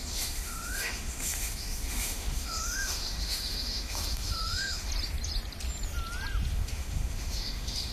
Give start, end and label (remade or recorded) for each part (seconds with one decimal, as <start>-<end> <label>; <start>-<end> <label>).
0.0-4.9 remade; 4.9-6.5 recorded; 6.5-7.9 remade